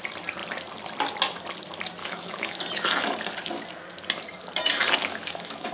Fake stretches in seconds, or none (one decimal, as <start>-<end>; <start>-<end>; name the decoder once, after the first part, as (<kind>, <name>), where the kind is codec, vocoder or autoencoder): 2.0-2.6 (autoencoder, DAC-VAE); 5.0-5.7